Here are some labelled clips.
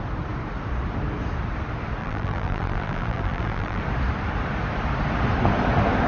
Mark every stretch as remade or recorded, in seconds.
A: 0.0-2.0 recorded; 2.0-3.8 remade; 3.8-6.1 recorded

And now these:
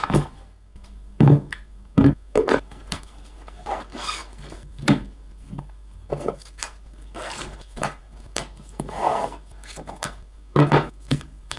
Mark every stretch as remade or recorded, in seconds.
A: 0.0-11.6 remade

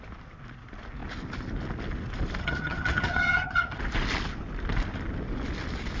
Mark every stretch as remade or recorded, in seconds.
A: 0.0-2.4 recorded; 2.4-3.8 remade; 3.8-6.0 recorded

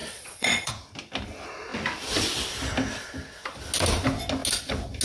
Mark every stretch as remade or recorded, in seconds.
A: 0.0-0.7 remade; 0.7-5.0 recorded

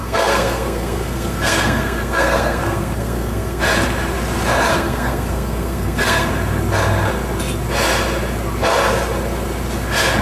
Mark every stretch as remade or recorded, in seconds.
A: 0.0-3.6 remade; 3.6-4.7 recorded; 4.7-6.3 remade; 6.3-10.2 recorded